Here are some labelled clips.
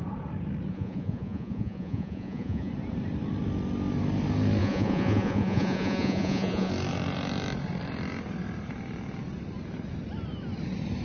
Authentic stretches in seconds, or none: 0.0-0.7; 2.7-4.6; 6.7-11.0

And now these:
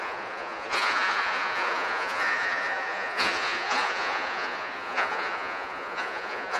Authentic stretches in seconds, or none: none

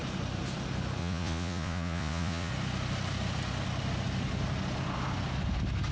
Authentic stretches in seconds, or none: 0.0-1.0; 2.5-5.9

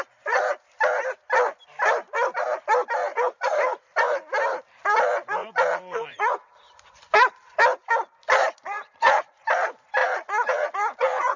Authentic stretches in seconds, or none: 0.0-3.1; 3.8-5.4; 6.6-8.4; 9.4-10.0